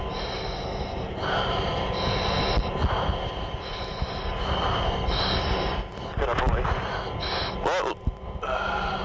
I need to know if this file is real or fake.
real